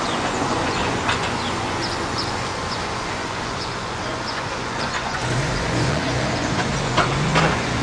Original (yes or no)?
no